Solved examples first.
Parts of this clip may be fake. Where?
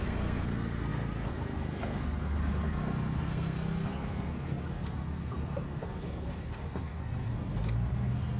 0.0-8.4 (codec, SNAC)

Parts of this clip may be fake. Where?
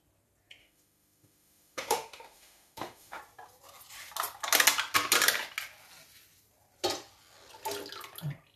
0.6-3.2 (autoencoder, DAC-VAE)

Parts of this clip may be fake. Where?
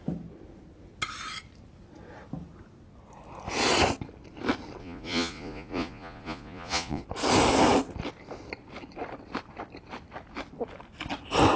4.8-7.0 (vocoder, Vocos)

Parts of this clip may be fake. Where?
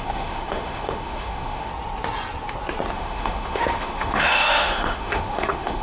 0.0-1.7 (autoencoder, DAC-VAE); 2.9-5.8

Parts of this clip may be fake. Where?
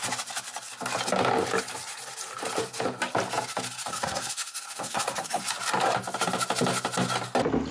3.9-5.4 (codec, SNAC)